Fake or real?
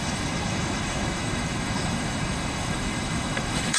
fake